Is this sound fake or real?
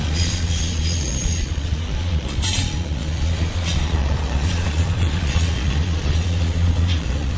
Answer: fake